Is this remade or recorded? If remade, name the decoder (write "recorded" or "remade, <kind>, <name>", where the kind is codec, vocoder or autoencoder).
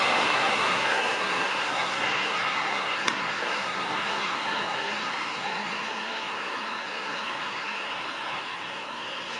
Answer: remade, codec, SNAC